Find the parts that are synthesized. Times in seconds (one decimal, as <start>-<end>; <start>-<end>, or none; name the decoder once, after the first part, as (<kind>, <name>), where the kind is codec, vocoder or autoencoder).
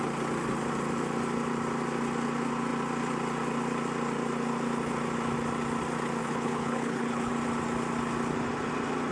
6.2-7.3 (codec, HILCodec)